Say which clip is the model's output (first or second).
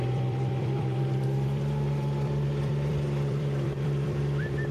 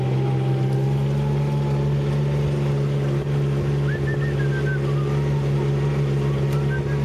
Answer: first